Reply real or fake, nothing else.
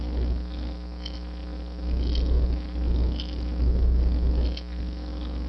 real